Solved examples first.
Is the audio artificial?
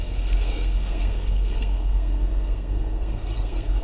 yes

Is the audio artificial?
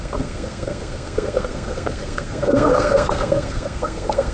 yes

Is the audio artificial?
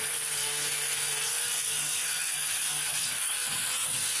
yes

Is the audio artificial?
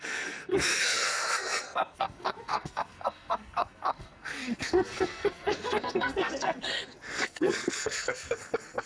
yes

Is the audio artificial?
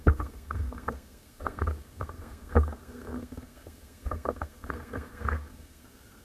yes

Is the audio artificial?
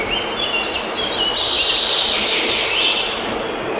no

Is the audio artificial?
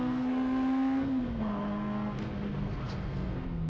yes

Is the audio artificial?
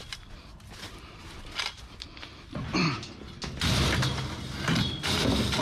no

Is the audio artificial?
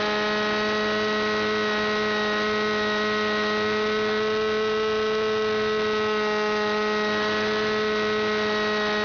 no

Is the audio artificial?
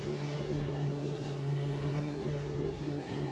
yes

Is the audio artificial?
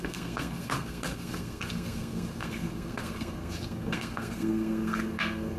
yes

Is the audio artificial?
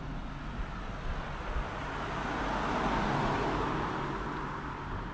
no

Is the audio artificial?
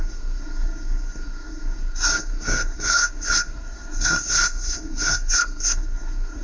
yes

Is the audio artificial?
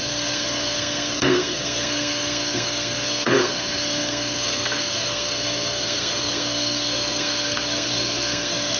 yes